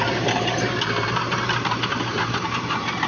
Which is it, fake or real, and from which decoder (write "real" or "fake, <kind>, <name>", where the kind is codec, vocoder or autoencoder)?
fake, vocoder, BigVGAN v2